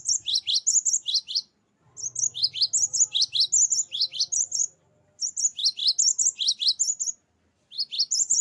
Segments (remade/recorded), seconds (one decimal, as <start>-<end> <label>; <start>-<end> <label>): 0.0-8.4 recorded